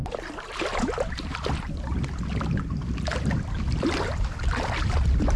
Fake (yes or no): no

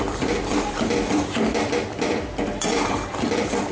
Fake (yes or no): yes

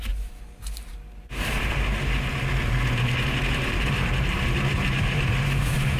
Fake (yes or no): yes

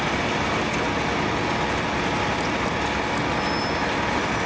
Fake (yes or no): no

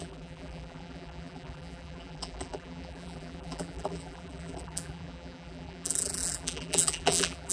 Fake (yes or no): yes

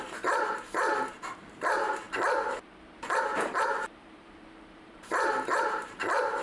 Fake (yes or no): yes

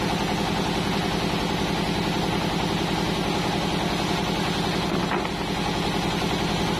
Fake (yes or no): no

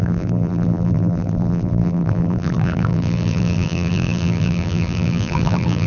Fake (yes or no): yes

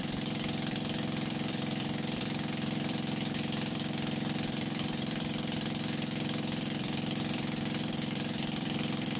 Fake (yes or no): yes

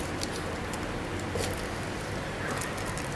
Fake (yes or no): no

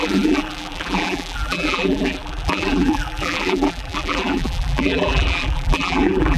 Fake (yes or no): yes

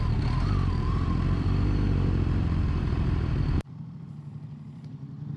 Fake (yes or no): yes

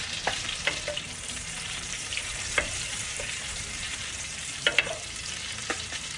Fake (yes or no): yes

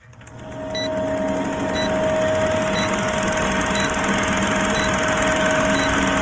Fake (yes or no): no